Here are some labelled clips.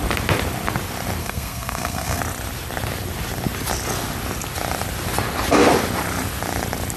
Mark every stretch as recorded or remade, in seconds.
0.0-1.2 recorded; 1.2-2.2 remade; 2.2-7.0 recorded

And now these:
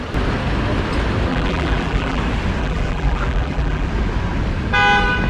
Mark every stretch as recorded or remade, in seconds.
0.0-1.3 recorded; 1.3-2.2 remade; 2.2-2.6 recorded; 2.6-3.9 remade; 3.9-5.3 recorded